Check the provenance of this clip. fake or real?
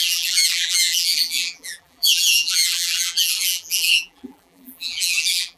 fake